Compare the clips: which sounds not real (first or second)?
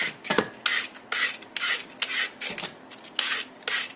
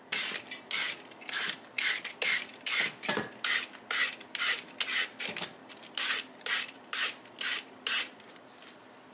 second